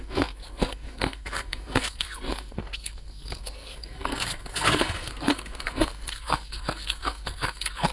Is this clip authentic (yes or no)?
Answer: no